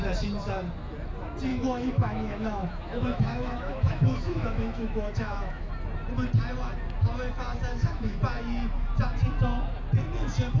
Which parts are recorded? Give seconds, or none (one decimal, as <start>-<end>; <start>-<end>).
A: 0.0-1.5; 5.7-7.7; 8.2-10.6